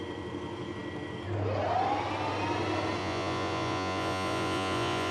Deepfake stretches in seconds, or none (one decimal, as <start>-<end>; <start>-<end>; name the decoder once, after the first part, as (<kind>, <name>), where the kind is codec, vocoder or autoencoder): 3.0-5.1 (vocoder, Vocos)